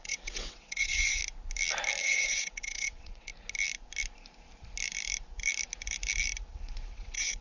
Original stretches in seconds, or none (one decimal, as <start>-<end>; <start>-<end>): 1.2-2.0; 3.3-6.5